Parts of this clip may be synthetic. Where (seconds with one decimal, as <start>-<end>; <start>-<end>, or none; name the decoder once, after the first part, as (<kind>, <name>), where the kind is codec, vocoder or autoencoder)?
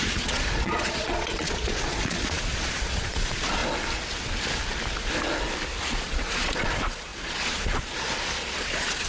0.0-3.6 (vocoder, Vocos); 5.8-9.1